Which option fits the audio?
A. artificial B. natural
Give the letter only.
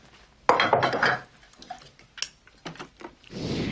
B